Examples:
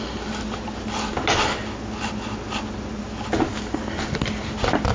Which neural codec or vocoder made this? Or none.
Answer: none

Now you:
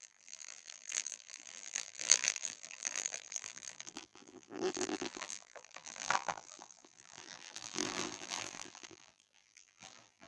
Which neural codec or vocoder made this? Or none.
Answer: vocoder, BigVGAN v2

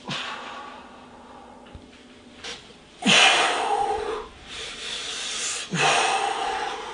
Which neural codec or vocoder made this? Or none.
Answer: none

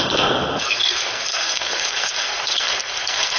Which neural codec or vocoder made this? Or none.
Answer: codec, SNAC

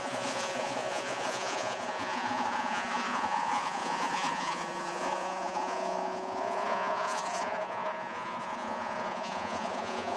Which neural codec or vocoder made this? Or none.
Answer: vocoder, Vocos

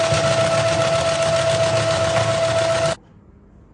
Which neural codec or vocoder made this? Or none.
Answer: none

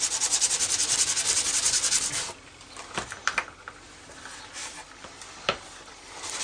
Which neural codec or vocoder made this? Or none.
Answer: none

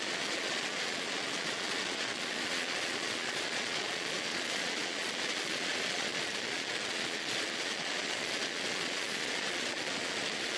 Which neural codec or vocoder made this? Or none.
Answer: vocoder, Vocos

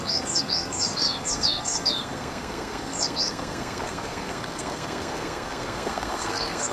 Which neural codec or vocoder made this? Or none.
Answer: codec, SNAC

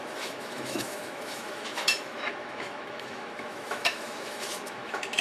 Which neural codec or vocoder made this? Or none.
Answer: autoencoder, DAC-VAE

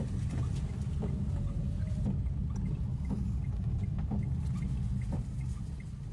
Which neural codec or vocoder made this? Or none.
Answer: none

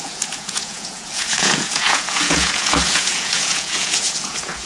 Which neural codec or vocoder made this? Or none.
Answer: vocoder, Vocos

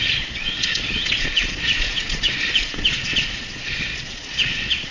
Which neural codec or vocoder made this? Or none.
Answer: vocoder, Vocos